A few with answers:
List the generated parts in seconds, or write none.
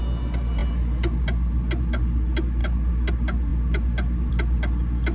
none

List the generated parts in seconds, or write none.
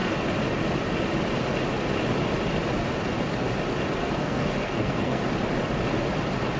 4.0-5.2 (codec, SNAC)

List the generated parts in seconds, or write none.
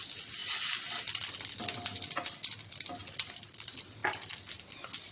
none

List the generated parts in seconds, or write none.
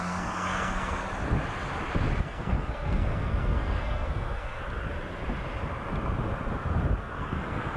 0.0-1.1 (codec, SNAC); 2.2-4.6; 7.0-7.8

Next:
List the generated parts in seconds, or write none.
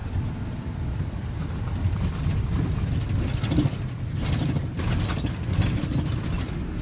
none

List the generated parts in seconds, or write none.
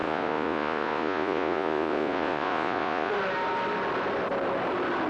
0.0-3.1 (vocoder, Vocos)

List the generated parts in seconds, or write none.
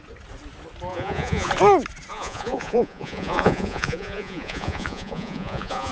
0.9-1.5 (vocoder, Vocos); 2.1-5.9